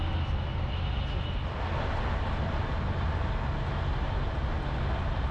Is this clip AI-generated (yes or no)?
no